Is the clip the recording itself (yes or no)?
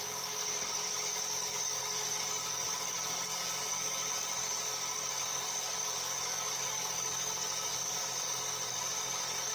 no